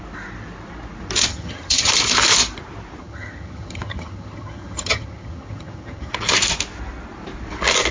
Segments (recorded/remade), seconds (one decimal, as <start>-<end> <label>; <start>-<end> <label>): 0.0-1.3 recorded; 1.3-1.9 remade; 1.9-3.0 recorded; 3.0-6.1 remade; 6.1-7.9 recorded

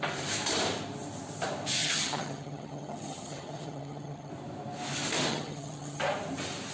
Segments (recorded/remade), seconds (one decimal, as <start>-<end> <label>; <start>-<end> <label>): 0.0-1.8 recorded; 1.8-4.3 remade; 4.3-5.3 recorded; 5.3-6.0 remade; 6.0-6.7 recorded